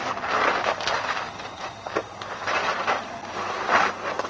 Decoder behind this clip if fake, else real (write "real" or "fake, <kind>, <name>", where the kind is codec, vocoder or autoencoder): real